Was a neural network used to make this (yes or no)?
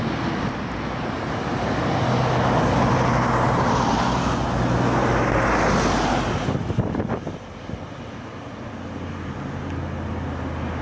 no